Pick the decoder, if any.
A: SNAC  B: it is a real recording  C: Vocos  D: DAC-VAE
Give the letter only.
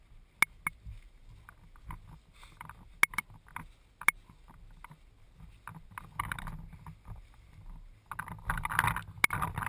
B